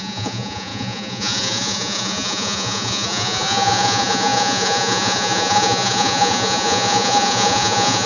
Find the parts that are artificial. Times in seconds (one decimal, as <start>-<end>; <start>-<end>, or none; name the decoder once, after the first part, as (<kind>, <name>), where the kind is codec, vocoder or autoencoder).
0.0-8.1 (vocoder, Vocos)